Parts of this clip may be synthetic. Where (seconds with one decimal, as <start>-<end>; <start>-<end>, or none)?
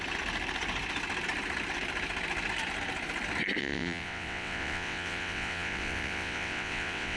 3.6-7.2